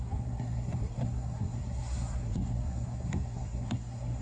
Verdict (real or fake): fake